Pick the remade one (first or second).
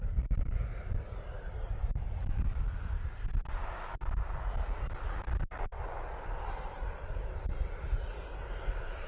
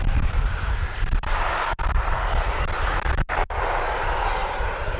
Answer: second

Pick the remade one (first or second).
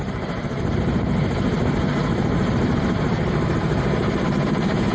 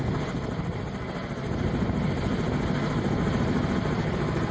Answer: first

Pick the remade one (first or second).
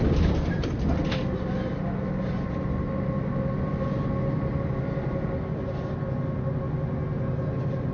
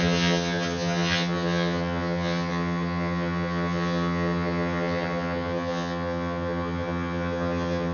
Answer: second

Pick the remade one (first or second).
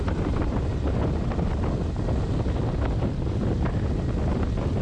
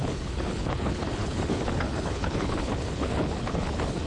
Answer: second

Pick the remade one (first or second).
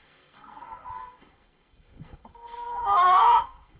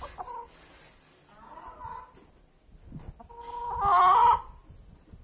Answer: first